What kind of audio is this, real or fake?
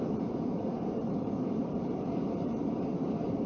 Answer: fake